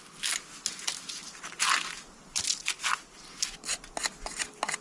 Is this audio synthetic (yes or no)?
no